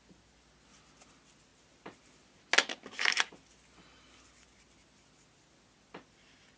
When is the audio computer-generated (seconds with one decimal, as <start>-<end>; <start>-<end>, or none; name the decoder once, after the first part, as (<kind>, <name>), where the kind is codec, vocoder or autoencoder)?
none